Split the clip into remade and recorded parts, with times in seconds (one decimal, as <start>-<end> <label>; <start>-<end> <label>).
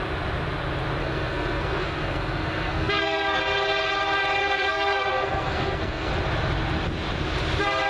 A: 0.0-1.0 recorded; 1.0-3.4 remade; 3.4-4.4 recorded; 4.4-6.1 remade; 6.1-7.9 recorded